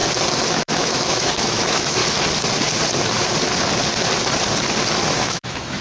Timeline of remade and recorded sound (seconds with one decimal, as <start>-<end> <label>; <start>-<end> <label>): 0.0-0.5 recorded; 0.5-2.0 remade; 2.0-5.2 recorded; 5.2-5.8 remade